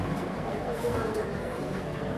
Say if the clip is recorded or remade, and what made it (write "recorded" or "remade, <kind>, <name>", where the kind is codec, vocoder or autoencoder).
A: remade, codec, SNAC